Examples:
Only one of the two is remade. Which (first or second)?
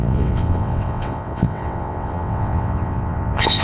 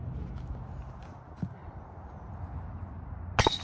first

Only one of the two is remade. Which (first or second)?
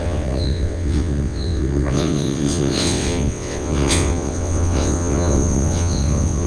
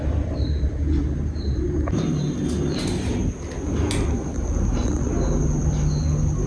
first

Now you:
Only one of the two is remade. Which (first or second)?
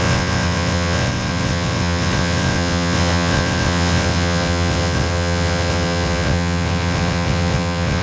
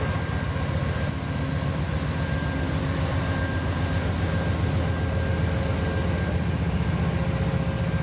first